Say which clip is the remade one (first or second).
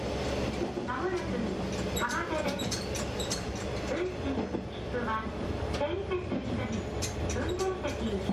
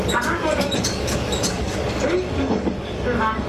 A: second